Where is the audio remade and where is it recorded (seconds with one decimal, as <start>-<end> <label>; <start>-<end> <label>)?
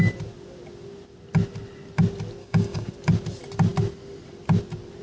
0.0-2.4 recorded; 2.4-2.9 remade; 2.9-5.0 recorded